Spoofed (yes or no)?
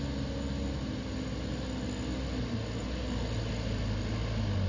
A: no